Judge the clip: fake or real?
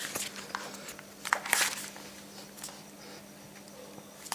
real